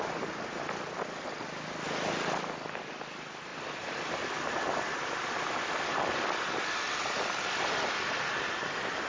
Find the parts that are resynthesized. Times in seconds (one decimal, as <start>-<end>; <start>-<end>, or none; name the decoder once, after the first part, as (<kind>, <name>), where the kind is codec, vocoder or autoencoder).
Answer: none